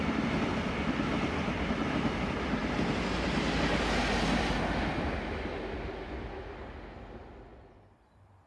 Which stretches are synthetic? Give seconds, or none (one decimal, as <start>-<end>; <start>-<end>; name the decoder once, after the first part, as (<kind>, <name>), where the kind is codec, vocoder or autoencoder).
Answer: none